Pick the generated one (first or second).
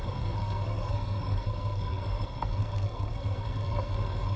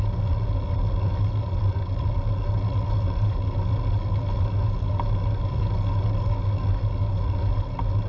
first